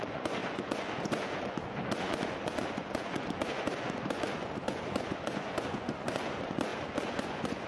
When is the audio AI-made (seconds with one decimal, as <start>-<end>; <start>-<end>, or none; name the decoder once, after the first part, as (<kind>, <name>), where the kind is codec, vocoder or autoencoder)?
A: 0.0-7.7 (vocoder, Vocos)